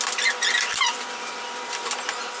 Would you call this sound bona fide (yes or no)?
yes